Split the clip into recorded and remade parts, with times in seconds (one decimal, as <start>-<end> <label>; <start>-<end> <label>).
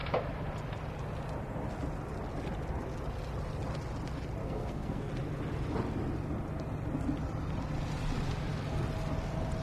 0.0-4.4 recorded; 4.4-5.1 remade; 5.1-9.6 recorded